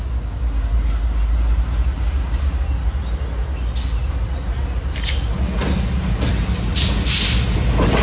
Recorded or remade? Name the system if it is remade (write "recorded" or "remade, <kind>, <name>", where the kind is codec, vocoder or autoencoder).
recorded